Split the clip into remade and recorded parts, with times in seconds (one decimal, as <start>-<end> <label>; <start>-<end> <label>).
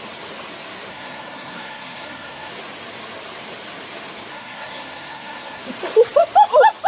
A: 0.0-0.9 recorded; 0.9-2.5 remade; 2.5-4.3 recorded; 4.3-5.6 remade; 5.6-6.9 recorded